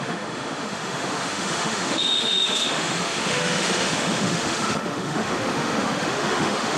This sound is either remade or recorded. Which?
remade